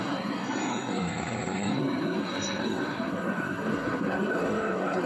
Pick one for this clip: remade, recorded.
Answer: remade